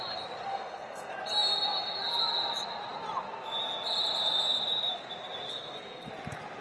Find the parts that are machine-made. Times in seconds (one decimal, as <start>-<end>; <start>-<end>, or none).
0.5-1.1; 5.5-6.1